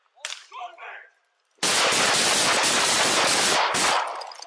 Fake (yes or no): no